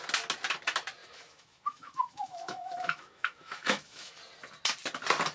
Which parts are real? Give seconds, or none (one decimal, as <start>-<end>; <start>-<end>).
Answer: 0.0-1.0; 4.2-5.3

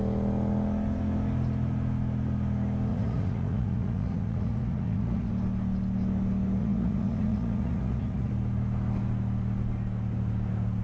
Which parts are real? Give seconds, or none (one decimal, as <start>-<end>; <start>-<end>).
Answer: 0.0-2.9; 5.3-6.6; 8.3-10.8

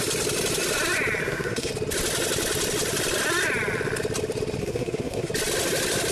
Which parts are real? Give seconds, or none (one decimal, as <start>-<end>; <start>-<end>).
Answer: 0.0-1.2; 1.7-4.6; 5.3-6.1

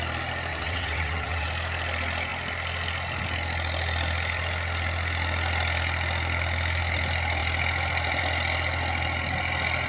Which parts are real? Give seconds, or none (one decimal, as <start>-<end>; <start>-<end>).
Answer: 0.0-0.5; 1.5-9.9

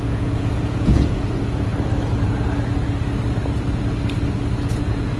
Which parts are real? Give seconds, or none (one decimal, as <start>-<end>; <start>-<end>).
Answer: 1.7-4.8